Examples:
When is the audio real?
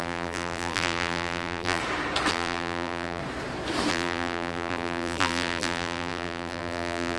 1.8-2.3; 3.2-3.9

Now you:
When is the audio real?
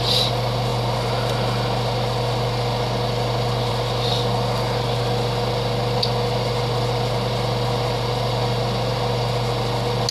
0.0-10.1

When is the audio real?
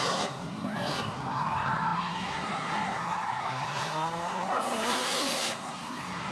none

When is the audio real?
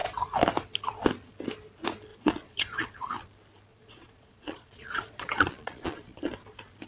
0.0-2.1; 3.1-3.7; 6.2-6.9